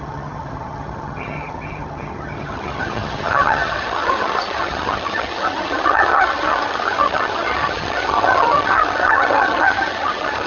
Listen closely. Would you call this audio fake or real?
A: fake